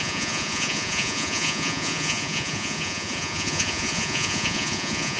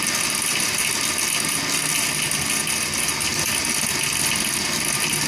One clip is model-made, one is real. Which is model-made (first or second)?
first